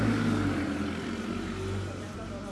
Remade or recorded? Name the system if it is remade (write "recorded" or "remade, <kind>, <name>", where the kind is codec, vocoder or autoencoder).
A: recorded